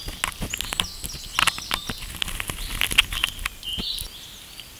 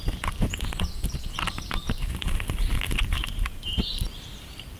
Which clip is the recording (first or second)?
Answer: first